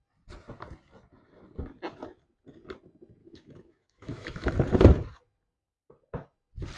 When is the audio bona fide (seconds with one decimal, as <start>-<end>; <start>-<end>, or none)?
0.0-3.2; 4.5-6.8